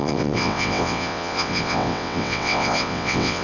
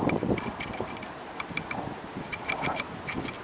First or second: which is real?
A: second